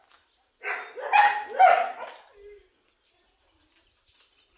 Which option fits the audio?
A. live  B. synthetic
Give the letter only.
A